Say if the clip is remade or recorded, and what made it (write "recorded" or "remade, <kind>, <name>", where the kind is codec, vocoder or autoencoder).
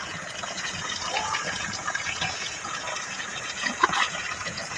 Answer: remade, vocoder, Vocos